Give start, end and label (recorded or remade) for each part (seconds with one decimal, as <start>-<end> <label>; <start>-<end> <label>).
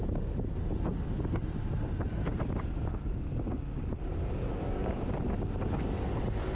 0.0-2.9 recorded; 2.9-3.9 remade; 3.9-4.4 recorded; 4.4-5.1 remade; 5.1-6.5 recorded